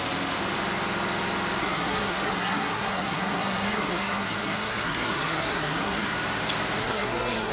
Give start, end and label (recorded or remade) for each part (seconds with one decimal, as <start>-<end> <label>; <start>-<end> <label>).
0.0-1.6 recorded; 1.6-6.1 remade; 6.1-6.8 recorded; 6.8-7.5 remade